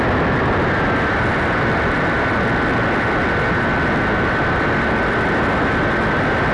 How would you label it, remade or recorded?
recorded